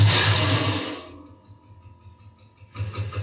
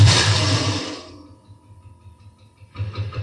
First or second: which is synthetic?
second